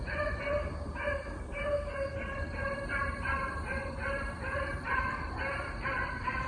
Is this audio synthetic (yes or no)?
yes